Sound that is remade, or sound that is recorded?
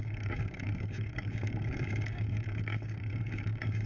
remade